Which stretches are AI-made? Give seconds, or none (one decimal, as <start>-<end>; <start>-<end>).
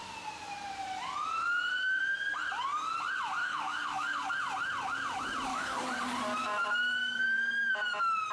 3.4-4.3; 5.5-6.0; 7.0-7.7